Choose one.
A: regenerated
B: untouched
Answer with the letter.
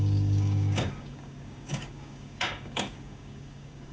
A